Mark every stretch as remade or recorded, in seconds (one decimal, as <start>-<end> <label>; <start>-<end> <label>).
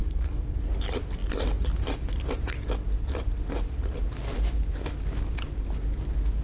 0.0-0.6 remade; 0.6-6.4 recorded